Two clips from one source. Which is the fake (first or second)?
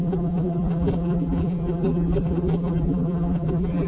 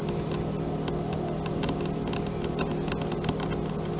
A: first